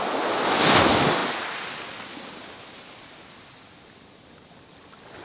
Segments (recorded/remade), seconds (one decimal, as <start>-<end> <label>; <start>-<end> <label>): 0.0-5.2 recorded